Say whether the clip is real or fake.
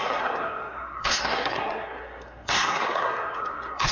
fake